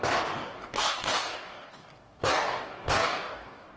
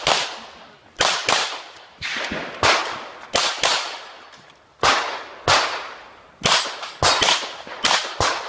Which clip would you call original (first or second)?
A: second